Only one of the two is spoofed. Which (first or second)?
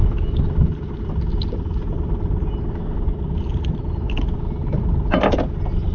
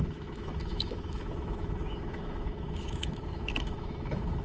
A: second